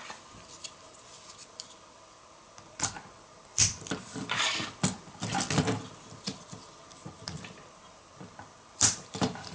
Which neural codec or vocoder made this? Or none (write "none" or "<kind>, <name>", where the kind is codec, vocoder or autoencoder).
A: vocoder, BigVGAN v2